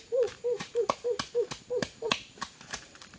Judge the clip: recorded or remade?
remade